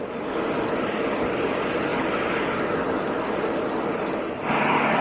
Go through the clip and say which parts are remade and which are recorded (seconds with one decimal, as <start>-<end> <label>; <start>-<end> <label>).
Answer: 0.0-5.0 recorded

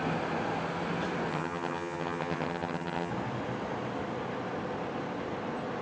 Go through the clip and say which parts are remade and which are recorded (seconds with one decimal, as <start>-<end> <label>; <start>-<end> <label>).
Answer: 0.0-1.3 recorded; 1.3-3.1 remade; 3.1-5.8 recorded

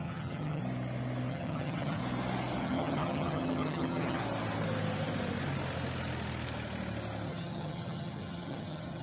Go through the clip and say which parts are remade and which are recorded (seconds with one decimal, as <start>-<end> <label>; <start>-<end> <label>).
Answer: 0.0-0.6 remade; 0.6-1.3 recorded; 1.3-2.0 remade; 2.0-2.6 recorded; 2.6-4.2 remade; 4.2-7.3 recorded; 7.3-9.0 remade

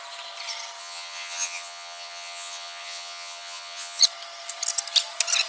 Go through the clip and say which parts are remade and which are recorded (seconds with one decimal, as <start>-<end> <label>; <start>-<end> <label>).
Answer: 0.0-0.8 recorded; 0.8-4.0 remade; 4.0-5.5 recorded